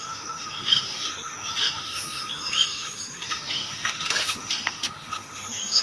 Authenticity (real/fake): fake